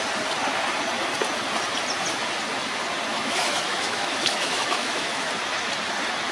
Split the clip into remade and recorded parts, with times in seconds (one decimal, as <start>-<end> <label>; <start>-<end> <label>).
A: 0.0-3.1 recorded; 3.1-5.3 remade; 5.3-6.3 recorded